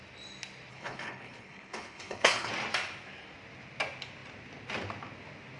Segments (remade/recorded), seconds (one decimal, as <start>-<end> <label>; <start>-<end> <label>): 0.0-0.7 recorded; 0.7-2.5 remade; 2.5-5.6 recorded